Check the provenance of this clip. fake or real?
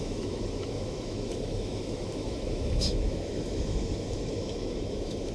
fake